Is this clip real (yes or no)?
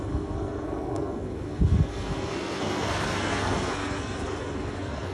no